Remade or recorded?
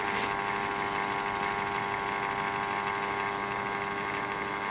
recorded